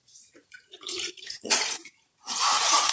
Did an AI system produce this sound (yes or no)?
yes